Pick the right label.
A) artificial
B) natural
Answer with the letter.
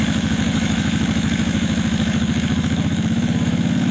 A